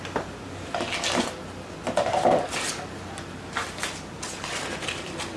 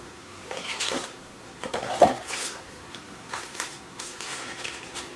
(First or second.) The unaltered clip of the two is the first